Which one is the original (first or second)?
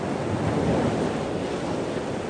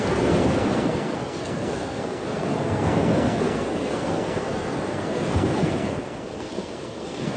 first